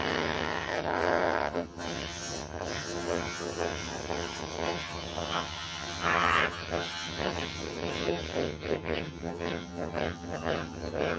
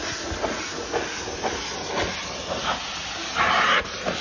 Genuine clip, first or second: second